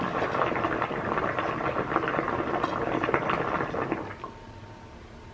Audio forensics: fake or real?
real